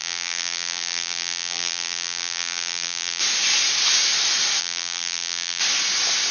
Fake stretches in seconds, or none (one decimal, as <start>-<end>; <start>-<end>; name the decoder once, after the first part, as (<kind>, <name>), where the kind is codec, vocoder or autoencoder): 0.0-3.2 (vocoder, BigVGAN v2); 4.6-5.6